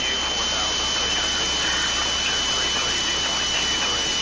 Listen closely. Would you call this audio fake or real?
real